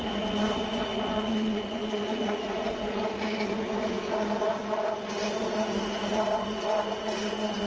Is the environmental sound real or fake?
fake